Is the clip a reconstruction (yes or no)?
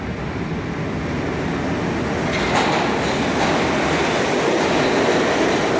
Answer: no